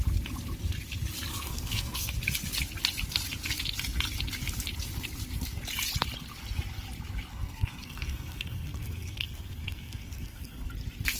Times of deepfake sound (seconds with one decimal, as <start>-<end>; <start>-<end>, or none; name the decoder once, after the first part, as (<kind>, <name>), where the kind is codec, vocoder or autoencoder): 1.3-2.1 (codec, SNAC); 7.3-10.7